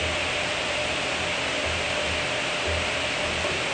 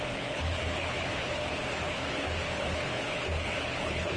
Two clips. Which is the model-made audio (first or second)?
second